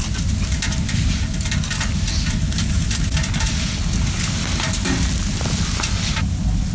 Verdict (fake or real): real